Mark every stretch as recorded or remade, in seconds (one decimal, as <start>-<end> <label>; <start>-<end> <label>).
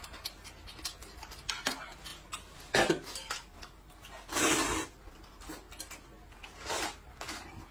0.0-7.7 recorded